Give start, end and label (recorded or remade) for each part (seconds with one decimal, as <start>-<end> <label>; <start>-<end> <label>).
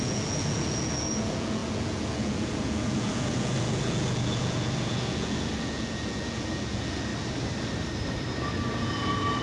0.0-7.1 remade; 7.1-9.4 recorded